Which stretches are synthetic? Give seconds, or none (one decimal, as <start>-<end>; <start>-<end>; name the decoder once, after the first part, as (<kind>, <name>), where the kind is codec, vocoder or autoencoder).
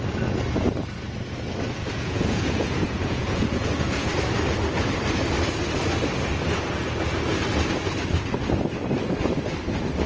1.9-4.1 (vocoder, Vocos)